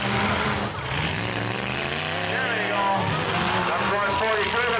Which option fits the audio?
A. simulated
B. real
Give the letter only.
B